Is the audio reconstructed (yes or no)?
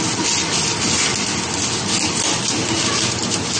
no